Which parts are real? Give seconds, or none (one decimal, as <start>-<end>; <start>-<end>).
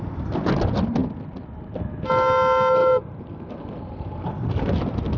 0.0-2.8; 4.2-5.2